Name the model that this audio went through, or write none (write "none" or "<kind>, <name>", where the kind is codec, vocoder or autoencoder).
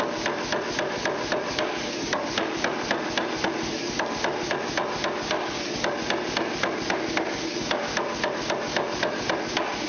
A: none